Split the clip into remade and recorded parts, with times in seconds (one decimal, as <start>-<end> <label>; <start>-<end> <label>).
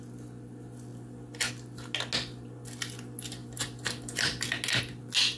0.0-5.4 recorded